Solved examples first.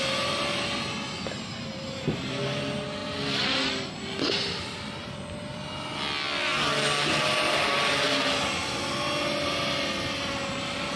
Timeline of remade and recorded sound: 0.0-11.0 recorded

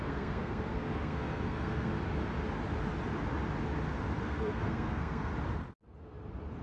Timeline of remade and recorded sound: 0.0-1.9 remade; 1.9-4.2 recorded; 4.2-5.3 remade; 5.3-6.6 recorded

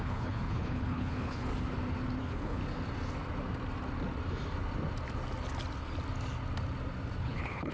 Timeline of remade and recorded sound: 0.0-1.5 remade; 1.5-2.2 recorded; 2.2-2.6 remade; 2.6-7.2 recorded; 7.2-7.7 remade

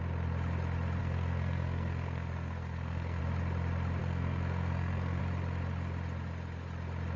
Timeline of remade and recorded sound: 0.0-1.0 recorded; 1.0-3.2 remade; 3.2-4.0 recorded; 4.0-5.2 remade; 5.2-7.2 recorded

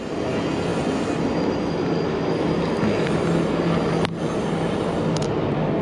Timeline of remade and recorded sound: 0.0-0.7 recorded; 0.7-1.7 remade; 1.7-5.8 recorded

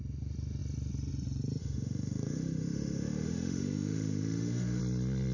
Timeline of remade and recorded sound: 0.0-1.6 recorded; 1.6-4.8 remade; 4.8-5.3 recorded